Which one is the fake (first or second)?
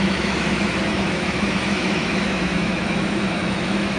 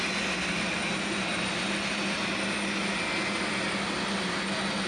first